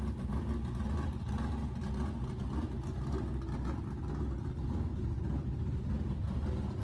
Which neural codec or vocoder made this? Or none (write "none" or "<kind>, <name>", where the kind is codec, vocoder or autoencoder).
none